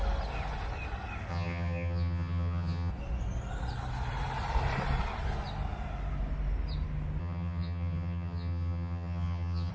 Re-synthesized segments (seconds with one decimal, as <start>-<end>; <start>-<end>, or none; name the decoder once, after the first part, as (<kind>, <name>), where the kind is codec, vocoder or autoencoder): 1.3-2.9 (vocoder, HiFi-GAN); 7.2-9.7